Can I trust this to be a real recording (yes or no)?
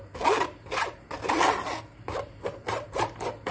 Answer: yes